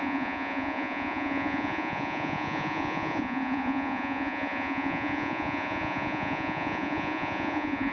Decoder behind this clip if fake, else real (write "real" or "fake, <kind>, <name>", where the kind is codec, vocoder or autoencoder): fake, vocoder, Vocos